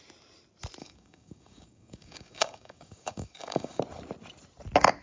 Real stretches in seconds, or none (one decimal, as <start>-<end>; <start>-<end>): 0.0-0.8; 3.8-5.0

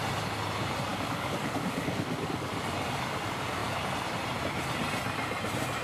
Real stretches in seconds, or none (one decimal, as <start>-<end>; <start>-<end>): 0.0-0.9; 2.5-5.8

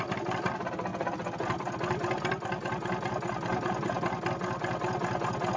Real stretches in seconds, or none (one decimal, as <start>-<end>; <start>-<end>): 0.0-5.6

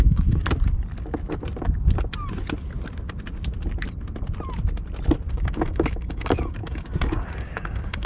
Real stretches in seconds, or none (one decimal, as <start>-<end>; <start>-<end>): 0.4-5.3

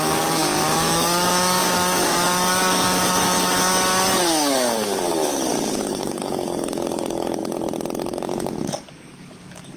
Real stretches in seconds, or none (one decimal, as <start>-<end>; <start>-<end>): 7.4-8.1

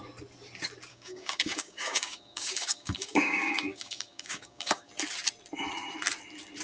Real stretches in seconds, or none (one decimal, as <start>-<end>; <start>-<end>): 0.0-0.9; 4.9-6.6